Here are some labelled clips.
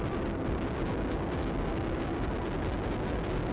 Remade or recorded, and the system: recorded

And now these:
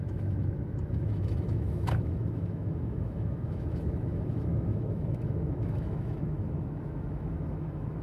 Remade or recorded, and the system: remade, autoencoder, DAC-VAE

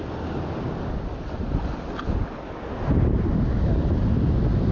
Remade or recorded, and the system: recorded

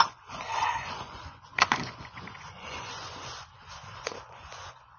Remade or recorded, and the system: remade, vocoder, Vocos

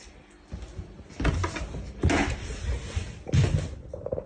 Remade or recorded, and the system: recorded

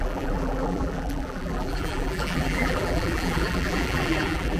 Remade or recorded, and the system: remade, vocoder, BigVGAN v2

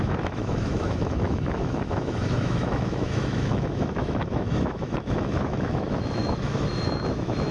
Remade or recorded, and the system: remade, autoencoder, DAC-VAE